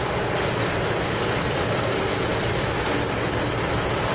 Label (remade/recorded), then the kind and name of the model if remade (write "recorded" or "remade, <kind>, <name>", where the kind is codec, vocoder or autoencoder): remade, vocoder, BigVGAN v2